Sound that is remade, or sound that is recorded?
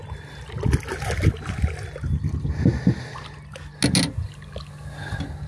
recorded